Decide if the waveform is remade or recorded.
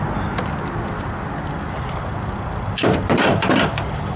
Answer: recorded